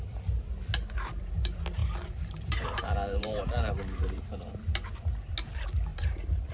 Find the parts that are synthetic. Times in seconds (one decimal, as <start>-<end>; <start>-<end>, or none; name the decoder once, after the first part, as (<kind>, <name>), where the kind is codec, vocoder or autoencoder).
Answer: 1.8-5.0 (vocoder, BigVGAN v2); 5.9-6.5